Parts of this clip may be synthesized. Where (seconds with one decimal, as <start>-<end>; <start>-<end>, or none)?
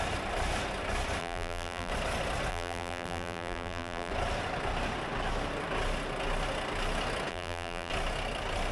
1.2-1.9; 2.5-4.1; 7.3-7.9